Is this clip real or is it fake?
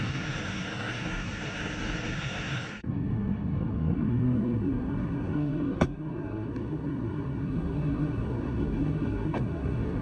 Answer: fake